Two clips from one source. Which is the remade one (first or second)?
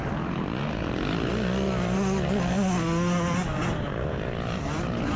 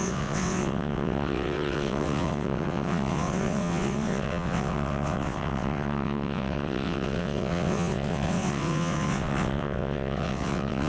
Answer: second